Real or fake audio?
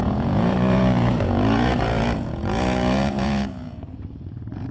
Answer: fake